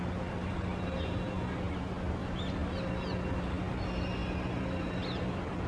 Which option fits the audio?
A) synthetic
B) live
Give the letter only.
B